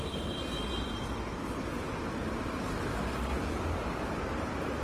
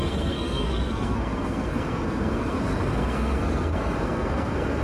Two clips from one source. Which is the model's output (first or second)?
second